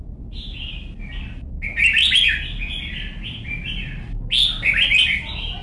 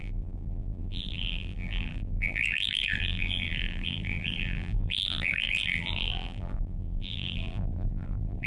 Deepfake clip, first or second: second